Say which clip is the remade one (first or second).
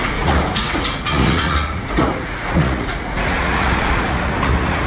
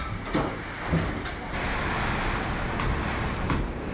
first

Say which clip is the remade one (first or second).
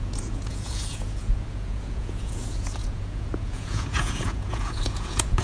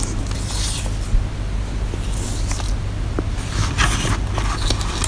first